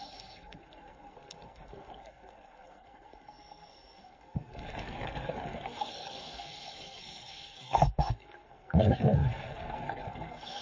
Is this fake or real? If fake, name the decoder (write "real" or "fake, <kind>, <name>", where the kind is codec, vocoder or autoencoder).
fake, codec, SNAC